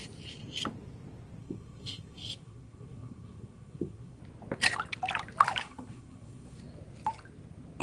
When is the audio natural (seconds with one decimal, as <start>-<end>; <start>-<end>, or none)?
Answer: 0.0-1.4; 4.2-5.6; 6.6-7.8